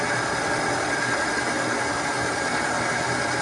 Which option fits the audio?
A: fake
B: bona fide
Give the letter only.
B